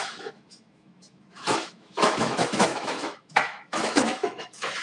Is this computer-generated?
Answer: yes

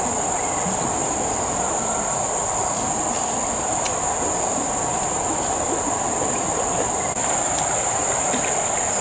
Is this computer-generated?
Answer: no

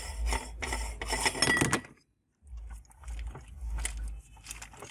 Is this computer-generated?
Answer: no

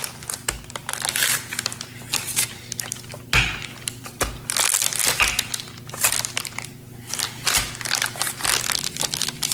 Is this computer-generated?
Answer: no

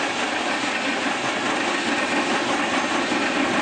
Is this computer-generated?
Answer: no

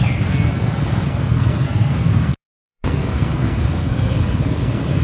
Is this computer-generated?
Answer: yes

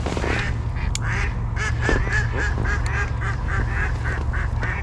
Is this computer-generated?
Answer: no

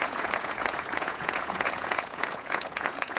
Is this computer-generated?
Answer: yes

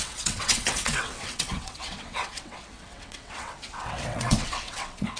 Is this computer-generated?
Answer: yes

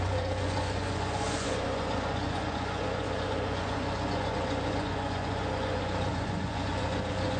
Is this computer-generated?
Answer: yes